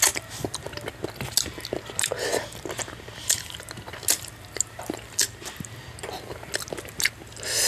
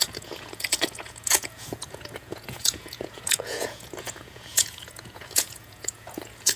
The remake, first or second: second